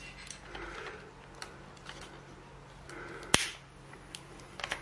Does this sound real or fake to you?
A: real